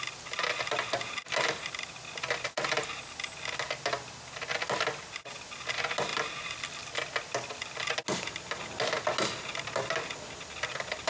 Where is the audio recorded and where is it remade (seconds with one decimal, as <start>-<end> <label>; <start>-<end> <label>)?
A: 0.0-11.1 recorded